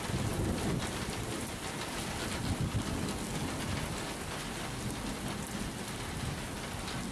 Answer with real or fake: real